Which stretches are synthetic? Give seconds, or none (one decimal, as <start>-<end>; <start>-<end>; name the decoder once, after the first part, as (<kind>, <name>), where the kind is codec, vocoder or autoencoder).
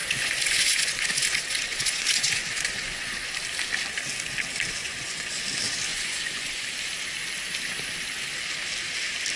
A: 0.0-3.3 (vocoder, Vocos); 4.8-5.4; 5.9-6.7